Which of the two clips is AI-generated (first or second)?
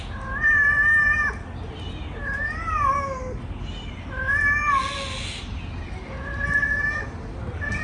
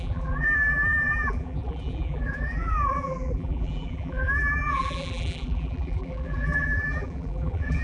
second